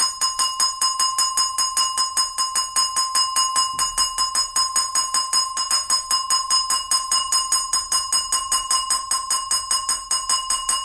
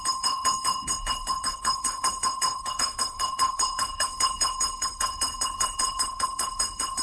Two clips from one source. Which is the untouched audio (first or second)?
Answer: first